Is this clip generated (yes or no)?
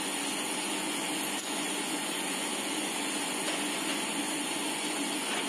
yes